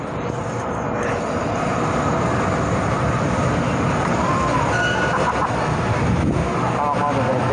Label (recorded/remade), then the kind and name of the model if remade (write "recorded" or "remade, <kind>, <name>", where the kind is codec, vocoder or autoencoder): recorded